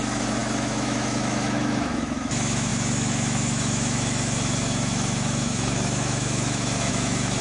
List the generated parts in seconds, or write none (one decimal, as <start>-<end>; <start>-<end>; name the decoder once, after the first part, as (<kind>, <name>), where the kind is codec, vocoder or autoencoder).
0.0-7.4 (autoencoder, DAC-VAE)